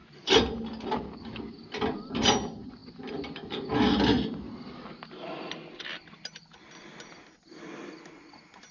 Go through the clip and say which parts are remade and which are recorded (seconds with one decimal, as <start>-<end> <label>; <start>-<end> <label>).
0.0-8.7 recorded